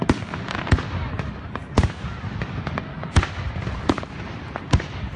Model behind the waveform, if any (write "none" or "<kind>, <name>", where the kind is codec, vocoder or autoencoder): none